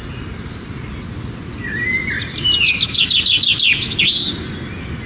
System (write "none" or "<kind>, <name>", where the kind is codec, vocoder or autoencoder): none